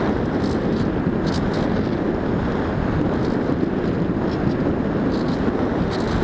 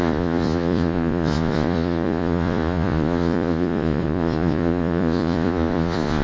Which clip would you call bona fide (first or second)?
first